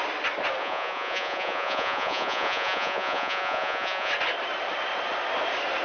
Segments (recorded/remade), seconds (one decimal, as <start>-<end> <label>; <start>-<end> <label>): 0.0-0.6 recorded; 0.6-4.1 remade; 4.1-5.8 recorded